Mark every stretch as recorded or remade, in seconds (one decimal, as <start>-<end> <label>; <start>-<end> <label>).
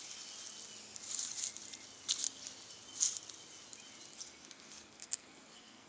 0.0-4.1 recorded; 4.1-5.9 remade